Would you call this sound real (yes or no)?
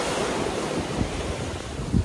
yes